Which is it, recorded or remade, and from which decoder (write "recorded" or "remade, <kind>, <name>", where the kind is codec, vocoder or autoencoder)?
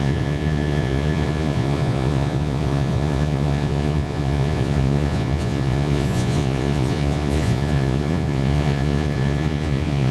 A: remade, vocoder, Vocos